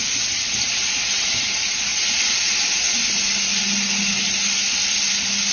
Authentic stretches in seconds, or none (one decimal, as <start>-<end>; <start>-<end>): 0.0-5.5